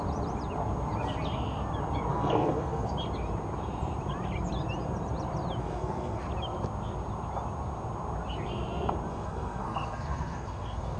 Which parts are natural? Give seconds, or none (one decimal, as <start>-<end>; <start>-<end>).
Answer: 0.0-2.1; 2.9-5.6; 6.2-9.1